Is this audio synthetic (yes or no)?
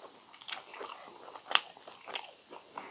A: no